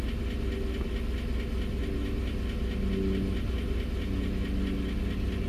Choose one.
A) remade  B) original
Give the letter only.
B